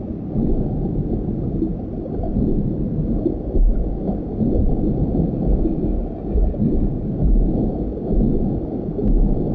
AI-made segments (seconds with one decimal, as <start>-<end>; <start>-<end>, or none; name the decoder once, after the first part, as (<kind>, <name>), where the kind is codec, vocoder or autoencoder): 1.7-2.4 (vocoder, BigVGAN v2)

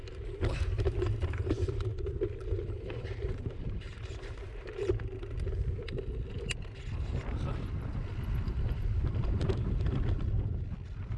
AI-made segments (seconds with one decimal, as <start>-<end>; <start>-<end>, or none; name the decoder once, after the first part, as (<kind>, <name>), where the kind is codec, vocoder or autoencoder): 0.0-4.9 (vocoder, BigVGAN v2)

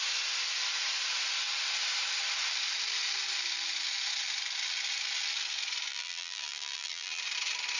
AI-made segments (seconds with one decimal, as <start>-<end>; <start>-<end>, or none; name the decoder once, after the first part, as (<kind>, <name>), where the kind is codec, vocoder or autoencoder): 5.9-7.2 (vocoder, BigVGAN v2)

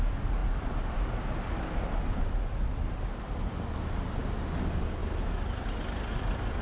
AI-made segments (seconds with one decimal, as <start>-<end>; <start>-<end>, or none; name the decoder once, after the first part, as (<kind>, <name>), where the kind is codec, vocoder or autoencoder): 0.4-1.2 (vocoder, BigVGAN v2)

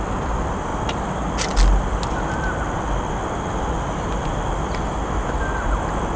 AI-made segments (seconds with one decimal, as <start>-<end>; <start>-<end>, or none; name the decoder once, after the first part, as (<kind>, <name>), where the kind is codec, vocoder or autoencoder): none